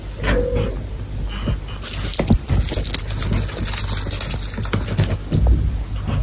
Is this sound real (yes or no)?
yes